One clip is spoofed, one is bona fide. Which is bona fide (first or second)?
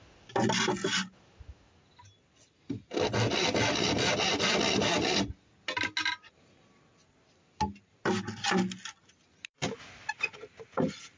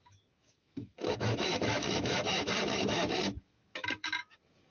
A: first